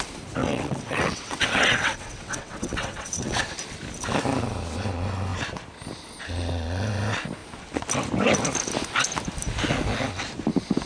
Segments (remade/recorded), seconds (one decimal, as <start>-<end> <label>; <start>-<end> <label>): 0.0-0.4 recorded; 0.4-3.4 remade; 3.4-10.9 recorded